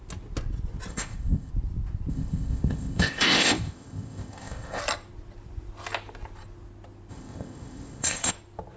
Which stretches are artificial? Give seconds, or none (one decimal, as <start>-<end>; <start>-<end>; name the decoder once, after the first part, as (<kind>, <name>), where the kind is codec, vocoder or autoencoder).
0.9-1.5 (codec, ZipCodec); 2.1-4.8; 7.1-8.3